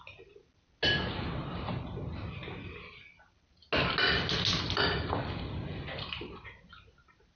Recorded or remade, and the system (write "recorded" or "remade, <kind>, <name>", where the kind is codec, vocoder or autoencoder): recorded